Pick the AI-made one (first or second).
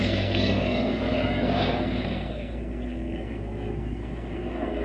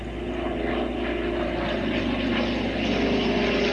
first